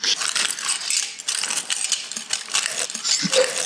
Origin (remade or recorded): recorded